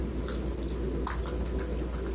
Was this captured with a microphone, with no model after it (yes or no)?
yes